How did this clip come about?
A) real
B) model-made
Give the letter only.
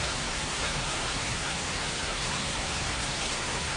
B